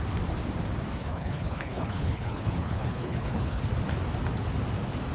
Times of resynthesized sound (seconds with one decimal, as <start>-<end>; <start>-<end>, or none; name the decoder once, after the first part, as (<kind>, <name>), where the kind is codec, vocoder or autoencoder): 1.0-3.6 (codec, HILCodec)

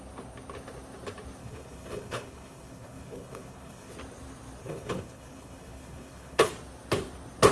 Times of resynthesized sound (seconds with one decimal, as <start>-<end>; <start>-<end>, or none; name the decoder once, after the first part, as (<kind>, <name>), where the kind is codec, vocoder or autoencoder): 1.4-3.9 (codec, HILCodec); 4.6-6.5

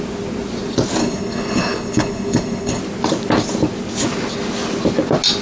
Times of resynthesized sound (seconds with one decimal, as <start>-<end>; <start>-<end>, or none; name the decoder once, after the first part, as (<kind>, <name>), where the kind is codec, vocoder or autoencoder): 1.0-2.8 (codec, HILCodec)

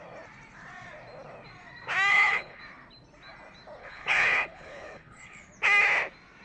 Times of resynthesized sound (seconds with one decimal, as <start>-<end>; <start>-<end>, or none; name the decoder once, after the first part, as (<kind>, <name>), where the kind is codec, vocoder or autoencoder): 2.1-2.6 (codec, HILCodec); 3.8-5.5

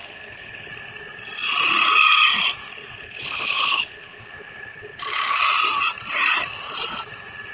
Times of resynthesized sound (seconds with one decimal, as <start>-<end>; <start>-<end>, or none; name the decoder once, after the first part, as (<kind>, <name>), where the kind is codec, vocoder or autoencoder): 0.0-0.7 (codec, HILCodec); 2.7-4.2

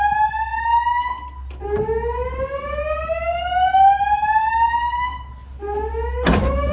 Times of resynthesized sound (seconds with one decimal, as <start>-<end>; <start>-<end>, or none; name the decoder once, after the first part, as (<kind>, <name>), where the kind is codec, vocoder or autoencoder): none

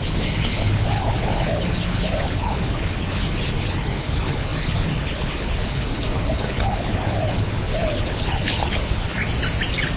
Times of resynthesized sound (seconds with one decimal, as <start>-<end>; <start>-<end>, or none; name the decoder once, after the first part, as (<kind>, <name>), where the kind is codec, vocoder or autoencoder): 0.0-9.2 (codec, HILCodec)

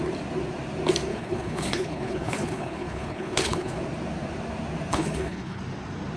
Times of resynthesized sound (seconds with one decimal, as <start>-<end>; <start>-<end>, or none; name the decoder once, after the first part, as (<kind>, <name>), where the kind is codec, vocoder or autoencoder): 1.1-3.8 (codec, HILCodec); 4.9-5.6